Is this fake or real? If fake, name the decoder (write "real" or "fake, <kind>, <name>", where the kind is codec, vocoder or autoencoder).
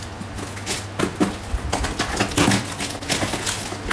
real